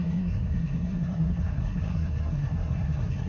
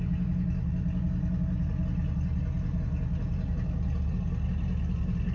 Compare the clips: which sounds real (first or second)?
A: second